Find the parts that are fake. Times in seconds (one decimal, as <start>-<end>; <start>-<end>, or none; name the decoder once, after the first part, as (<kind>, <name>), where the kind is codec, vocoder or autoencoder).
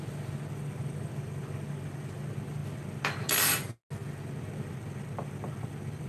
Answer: none